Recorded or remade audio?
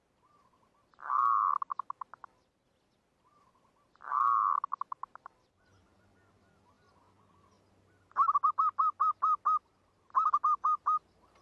recorded